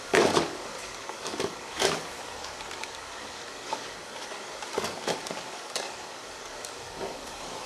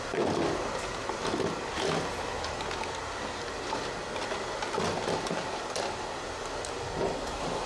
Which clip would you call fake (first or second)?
first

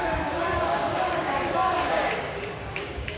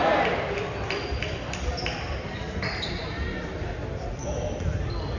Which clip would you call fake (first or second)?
first